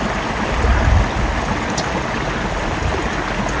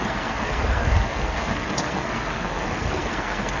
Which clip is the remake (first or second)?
second